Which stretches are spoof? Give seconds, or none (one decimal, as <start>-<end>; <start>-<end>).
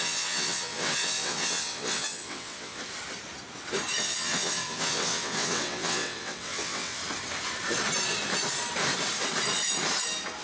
0.0-2.8; 4.0-7.0